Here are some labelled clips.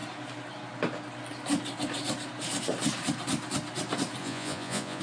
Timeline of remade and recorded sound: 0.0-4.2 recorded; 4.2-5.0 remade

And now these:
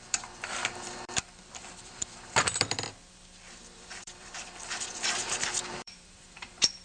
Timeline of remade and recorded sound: 0.0-5.2 remade; 5.2-5.7 recorded; 5.7-6.8 remade

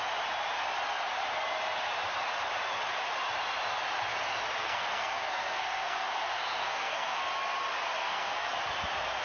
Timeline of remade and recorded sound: 0.0-4.6 recorded; 4.6-7.2 remade; 7.2-8.0 recorded; 8.0-8.5 remade; 8.5-9.2 recorded

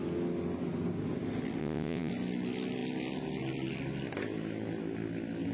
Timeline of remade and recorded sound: 0.0-1.6 recorded; 1.6-2.1 remade; 2.1-5.5 recorded